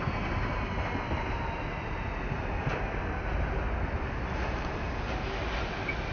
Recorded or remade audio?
recorded